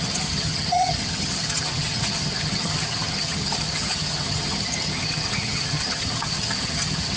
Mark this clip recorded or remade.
remade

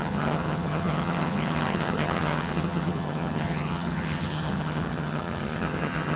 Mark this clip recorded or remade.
remade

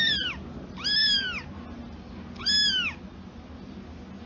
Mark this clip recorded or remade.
recorded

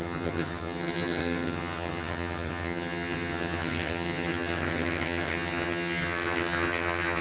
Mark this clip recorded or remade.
remade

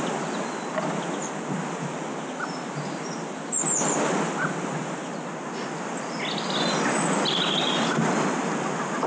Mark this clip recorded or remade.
recorded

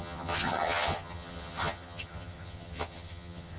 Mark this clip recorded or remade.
remade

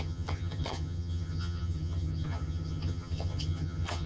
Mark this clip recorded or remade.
remade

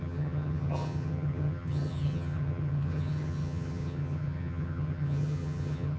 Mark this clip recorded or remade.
remade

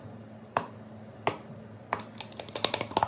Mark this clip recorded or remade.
recorded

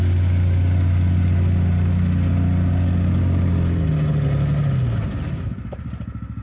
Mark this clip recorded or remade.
recorded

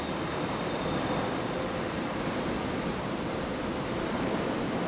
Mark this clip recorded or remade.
recorded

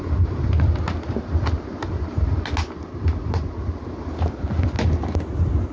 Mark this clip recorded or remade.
recorded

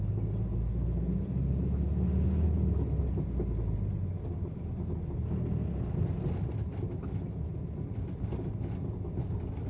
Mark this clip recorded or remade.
recorded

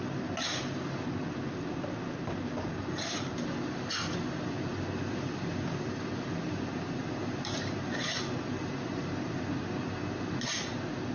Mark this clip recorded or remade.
recorded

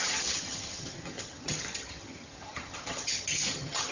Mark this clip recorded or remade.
remade